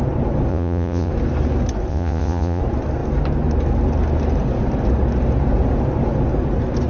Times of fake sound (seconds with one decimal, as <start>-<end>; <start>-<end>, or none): 0.5-1.1; 1.9-2.6